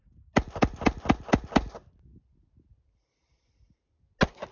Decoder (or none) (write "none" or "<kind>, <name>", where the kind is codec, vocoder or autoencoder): none